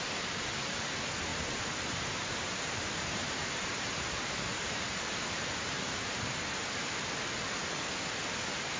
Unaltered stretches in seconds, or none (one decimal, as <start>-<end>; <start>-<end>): 0.0-1.3; 6.1-8.8